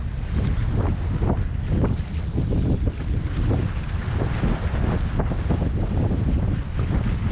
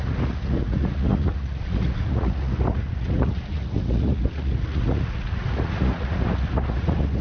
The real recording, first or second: first